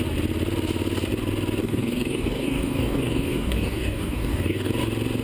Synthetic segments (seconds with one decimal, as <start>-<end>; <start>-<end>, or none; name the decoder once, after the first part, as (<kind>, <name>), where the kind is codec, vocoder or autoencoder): 1.6-4.7 (codec, DAC)